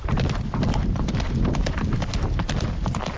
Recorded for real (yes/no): yes